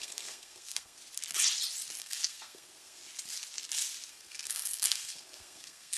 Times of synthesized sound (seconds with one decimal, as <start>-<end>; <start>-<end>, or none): 0.0-1.0; 2.0-3.0; 4.1-6.0